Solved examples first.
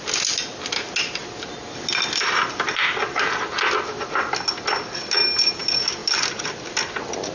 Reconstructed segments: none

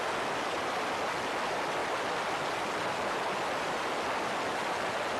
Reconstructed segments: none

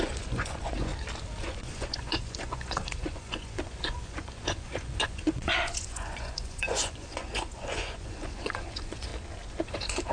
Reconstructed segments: 0.0-0.9 (vocoder, Vocos); 1.4-9.1; 9.7-10.1

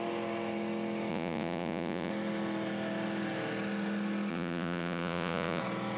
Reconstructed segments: 1.1-2.1 (vocoder, Vocos); 4.3-5.6

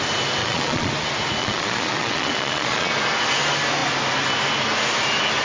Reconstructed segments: 0.4-0.9 (vocoder, Vocos); 1.4-2.9